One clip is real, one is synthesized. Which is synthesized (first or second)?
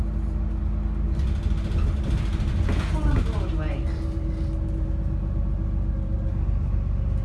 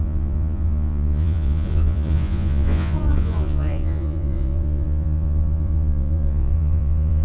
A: second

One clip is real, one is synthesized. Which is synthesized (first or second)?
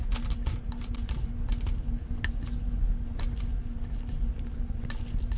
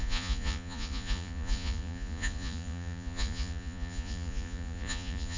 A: second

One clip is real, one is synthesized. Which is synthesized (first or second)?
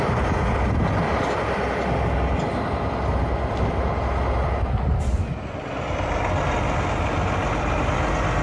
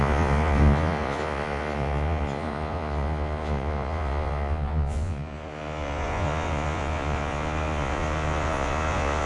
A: second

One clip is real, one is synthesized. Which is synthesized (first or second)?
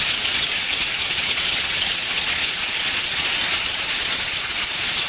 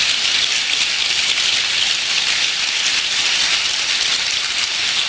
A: first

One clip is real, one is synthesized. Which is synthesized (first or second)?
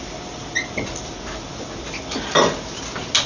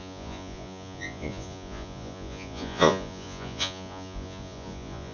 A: second